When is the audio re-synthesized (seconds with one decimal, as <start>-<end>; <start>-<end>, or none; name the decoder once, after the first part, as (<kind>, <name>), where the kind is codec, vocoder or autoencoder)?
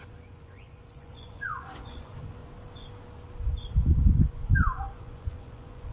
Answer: 0.0-2.4 (vocoder, Vocos); 3.7-5.9